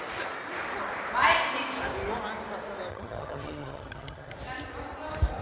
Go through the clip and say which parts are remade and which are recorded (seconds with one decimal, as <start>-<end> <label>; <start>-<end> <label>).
0.0-2.9 recorded; 2.9-4.3 remade; 4.3-5.4 recorded